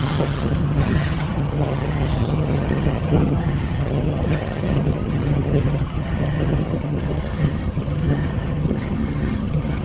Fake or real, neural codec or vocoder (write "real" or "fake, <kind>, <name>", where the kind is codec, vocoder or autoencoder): fake, vocoder, HiFi-GAN